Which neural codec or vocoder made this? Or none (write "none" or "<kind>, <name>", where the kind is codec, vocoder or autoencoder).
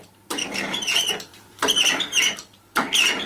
vocoder, BigVGAN v2